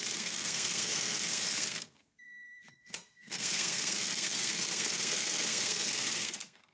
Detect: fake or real fake